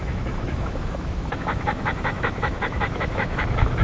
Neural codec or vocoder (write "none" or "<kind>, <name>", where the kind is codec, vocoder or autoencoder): autoencoder, DAC-VAE